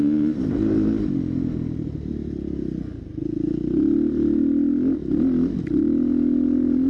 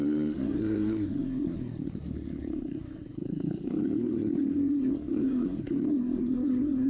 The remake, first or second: second